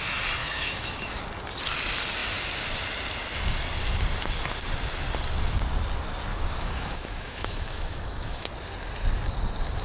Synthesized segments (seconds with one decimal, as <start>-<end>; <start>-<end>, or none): 0.4-1.2; 6.3-8.5